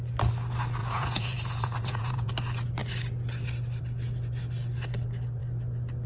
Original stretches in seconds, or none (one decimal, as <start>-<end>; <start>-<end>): 0.0-0.8; 2.3-6.1

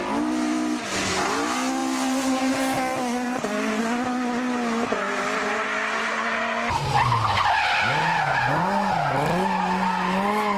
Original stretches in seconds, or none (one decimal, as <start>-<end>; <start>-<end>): 0.0-10.6

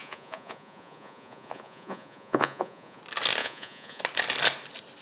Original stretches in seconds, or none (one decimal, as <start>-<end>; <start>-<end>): 3.0-3.4; 4.0-5.0

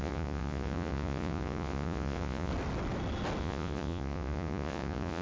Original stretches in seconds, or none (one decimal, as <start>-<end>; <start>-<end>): 2.5-3.4

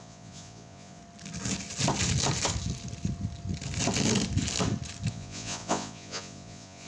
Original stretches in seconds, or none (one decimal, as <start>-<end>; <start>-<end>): 1.0-5.1

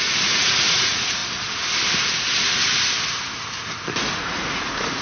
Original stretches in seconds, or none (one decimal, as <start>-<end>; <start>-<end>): 1.2-4.1

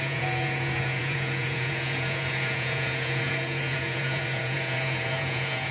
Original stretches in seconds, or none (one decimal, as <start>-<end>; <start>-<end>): none

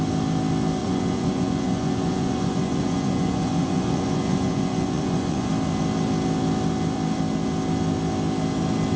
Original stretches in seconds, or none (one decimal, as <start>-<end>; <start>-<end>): 0.0-0.8; 5.5-9.0